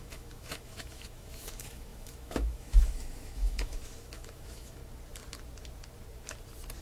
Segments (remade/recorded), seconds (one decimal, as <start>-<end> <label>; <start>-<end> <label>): 0.0-4.8 remade; 4.8-6.8 recorded